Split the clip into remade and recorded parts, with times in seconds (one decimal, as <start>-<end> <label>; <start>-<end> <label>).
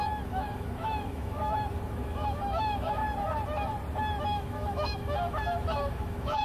0.0-3.0 remade; 3.0-4.2 recorded; 4.2-6.4 remade